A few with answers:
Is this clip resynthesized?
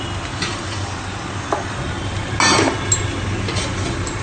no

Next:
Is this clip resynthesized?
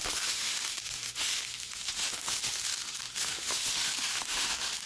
yes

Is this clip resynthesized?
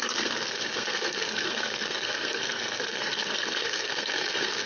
yes